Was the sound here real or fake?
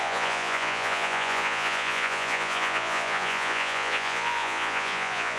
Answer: fake